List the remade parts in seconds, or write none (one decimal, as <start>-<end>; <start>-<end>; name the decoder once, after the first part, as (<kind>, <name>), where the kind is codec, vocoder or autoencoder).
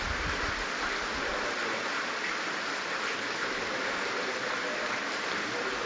none